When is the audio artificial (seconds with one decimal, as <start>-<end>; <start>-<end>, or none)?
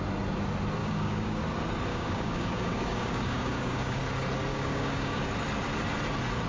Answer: 0.8-1.4; 1.9-4.0; 4.5-5.2